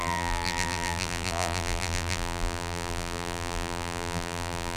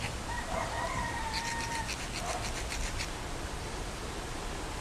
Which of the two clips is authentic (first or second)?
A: second